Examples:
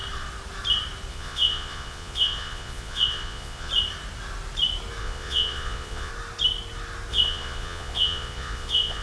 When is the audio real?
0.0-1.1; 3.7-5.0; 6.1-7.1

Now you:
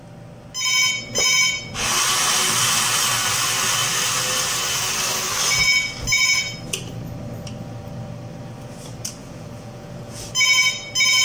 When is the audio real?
0.0-9.2; 10.3-11.2